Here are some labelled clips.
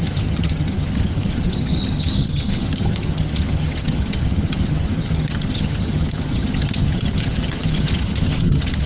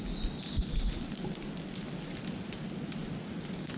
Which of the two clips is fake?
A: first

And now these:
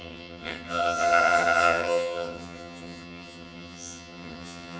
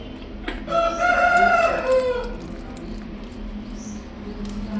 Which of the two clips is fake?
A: first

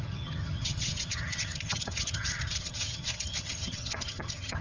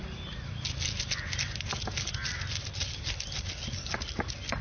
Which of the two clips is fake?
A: first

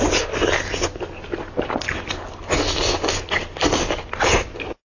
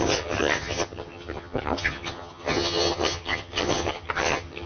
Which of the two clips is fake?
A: second